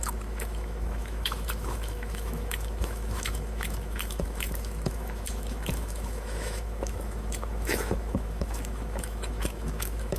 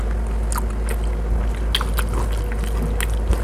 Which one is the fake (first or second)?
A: first